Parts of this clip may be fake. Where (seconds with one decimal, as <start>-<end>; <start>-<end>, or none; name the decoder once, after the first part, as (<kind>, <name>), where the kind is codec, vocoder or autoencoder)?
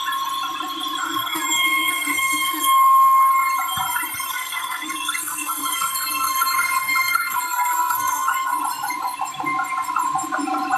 1.0-3.3 (codec, SNAC); 4.3-8.6